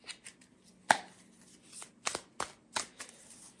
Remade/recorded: recorded